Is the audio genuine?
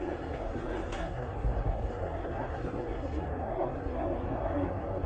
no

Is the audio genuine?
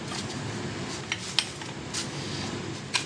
yes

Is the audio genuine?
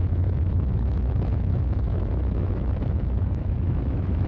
no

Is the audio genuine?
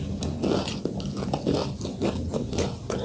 yes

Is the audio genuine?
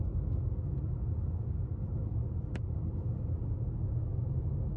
yes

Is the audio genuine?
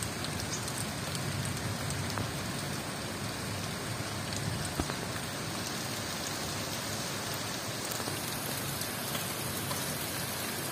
yes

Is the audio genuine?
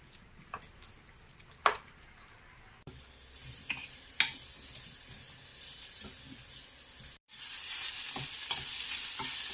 yes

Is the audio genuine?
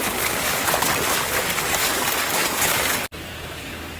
no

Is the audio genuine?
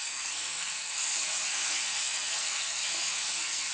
no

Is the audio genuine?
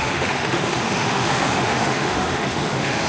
no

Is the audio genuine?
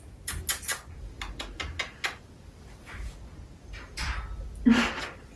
yes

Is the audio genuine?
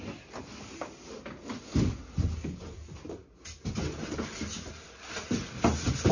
yes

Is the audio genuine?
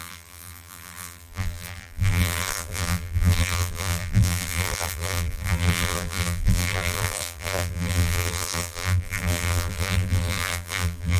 no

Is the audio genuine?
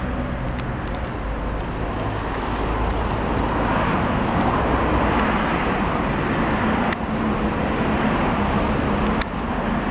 yes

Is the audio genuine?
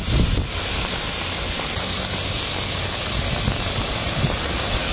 yes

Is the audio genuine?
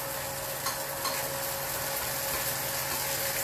yes